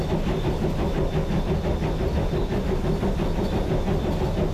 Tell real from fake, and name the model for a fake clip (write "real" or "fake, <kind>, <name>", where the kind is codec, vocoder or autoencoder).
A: real